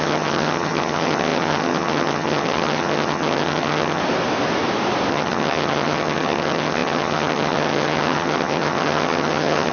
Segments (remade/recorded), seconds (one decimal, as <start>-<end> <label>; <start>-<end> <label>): 0.0-4.0 remade; 4.0-5.1 recorded; 5.1-9.7 remade